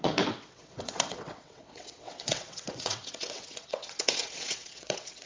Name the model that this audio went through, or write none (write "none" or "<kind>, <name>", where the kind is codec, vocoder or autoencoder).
vocoder, WaveNeXt